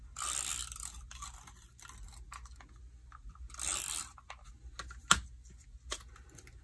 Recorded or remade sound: recorded